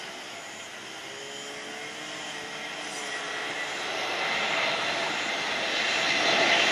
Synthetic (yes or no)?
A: no